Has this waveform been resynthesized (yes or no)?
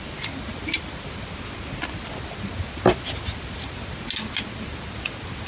no